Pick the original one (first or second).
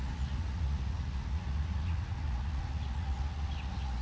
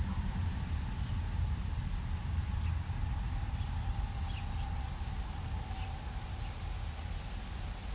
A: second